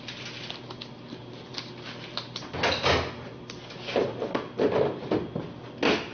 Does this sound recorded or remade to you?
recorded